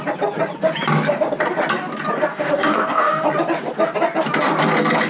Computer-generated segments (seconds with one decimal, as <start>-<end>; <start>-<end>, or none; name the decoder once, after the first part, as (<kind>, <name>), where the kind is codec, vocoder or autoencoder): 2.3-3.2 (codec, DAC)